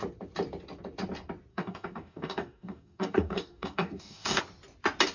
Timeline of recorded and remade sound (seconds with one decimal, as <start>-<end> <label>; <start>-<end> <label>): 0.0-1.5 recorded; 1.5-4.4 remade; 4.4-5.1 recorded